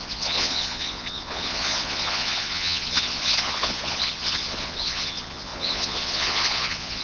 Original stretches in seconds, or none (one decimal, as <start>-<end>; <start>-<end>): none

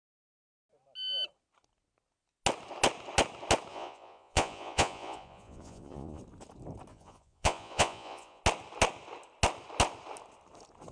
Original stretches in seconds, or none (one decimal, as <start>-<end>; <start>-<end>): 0.0-3.7; 6.2-6.9; 8.4-10.9